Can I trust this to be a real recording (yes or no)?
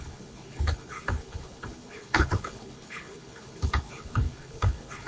no